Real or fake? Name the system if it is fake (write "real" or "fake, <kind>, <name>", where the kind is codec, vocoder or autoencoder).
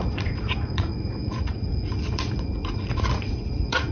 fake, vocoder, Vocos